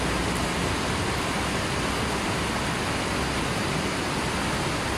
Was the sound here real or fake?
real